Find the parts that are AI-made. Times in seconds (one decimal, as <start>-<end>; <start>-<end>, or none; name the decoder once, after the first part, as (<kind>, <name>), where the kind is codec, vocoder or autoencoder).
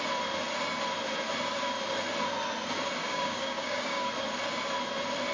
3.0-4.1 (codec, DAC)